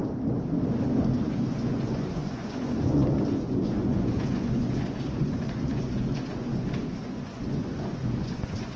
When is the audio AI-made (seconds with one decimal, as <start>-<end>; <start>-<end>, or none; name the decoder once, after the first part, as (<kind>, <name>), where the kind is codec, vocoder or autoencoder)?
1.2-8.8 (vocoder, Vocos)